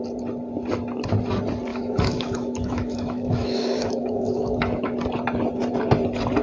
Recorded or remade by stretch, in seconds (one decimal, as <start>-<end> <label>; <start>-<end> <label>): 0.0-1.7 recorded; 1.7-4.9 remade; 4.9-6.4 recorded